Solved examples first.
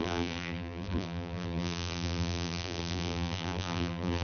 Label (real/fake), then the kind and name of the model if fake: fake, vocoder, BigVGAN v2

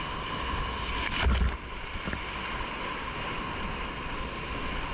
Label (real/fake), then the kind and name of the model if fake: real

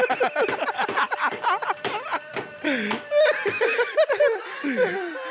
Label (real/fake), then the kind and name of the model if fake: real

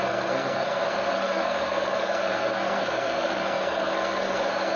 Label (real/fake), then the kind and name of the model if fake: fake, codec, SNAC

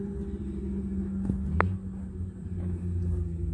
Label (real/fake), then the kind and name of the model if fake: real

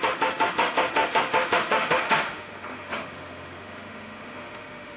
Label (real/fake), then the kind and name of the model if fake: fake, autoencoder, DAC-VAE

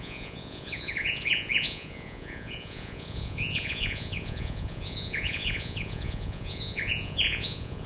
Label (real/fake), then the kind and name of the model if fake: fake, vocoder, Vocos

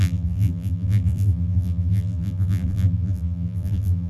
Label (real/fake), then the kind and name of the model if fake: fake, vocoder, BigVGAN v2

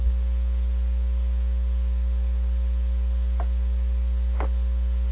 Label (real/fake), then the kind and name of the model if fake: real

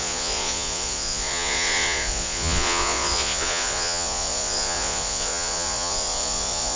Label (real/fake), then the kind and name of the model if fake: fake, vocoder, Vocos